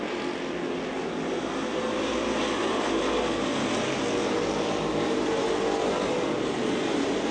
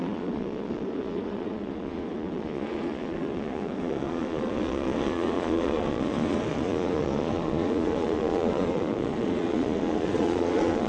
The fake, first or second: second